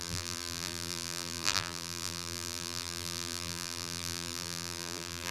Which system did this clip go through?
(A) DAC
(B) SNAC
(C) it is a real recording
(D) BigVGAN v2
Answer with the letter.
D